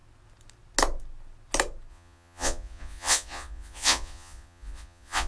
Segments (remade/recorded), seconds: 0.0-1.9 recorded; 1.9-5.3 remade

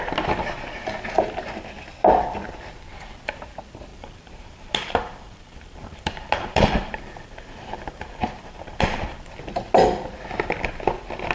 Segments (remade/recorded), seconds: 0.0-3.9 recorded; 3.9-9.2 remade; 9.2-11.3 recorded

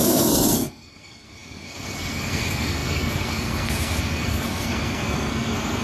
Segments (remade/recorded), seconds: 0.0-5.8 remade

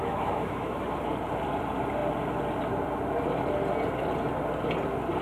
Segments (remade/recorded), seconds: 0.0-0.7 remade; 0.7-5.2 recorded

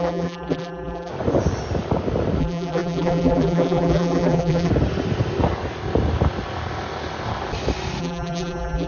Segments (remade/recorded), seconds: 0.0-1.1 remade; 1.1-2.4 recorded; 2.4-4.7 remade; 4.7-8.0 recorded; 8.0-8.9 remade